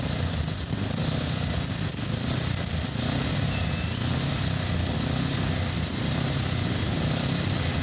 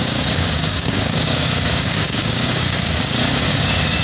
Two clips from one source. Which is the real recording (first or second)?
first